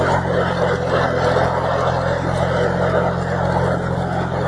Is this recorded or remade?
recorded